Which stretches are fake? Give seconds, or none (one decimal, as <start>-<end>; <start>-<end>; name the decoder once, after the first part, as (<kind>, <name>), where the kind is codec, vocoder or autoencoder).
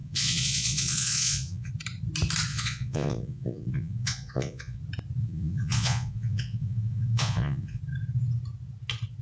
0.0-1.7 (vocoder, Vocos); 2.5-4.8; 5.2-7.8